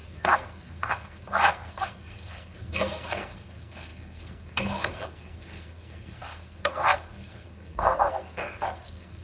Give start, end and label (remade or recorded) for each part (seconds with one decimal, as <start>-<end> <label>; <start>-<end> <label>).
0.0-9.2 remade